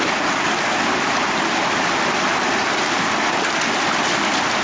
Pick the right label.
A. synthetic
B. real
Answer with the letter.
B